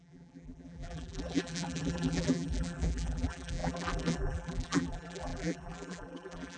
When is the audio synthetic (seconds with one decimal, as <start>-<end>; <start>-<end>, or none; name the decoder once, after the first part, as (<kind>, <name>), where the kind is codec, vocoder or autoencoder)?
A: 0.0-6.6 (vocoder, BigVGAN v2)